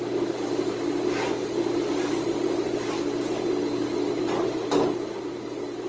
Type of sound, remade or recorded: recorded